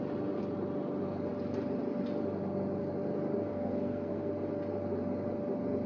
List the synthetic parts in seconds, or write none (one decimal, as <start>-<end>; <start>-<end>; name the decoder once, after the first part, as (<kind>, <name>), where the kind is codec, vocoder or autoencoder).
3.5-4.3 (codec, SNAC)